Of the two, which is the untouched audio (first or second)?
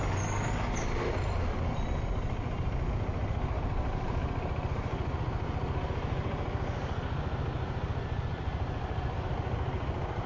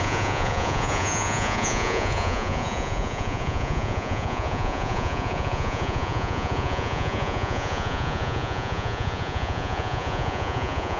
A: first